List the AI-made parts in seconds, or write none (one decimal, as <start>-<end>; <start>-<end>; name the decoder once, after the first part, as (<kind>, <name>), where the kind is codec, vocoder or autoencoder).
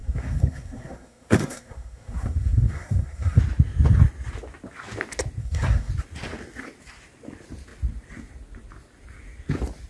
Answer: 0.0-3.4 (codec, SNAC); 5.4-5.9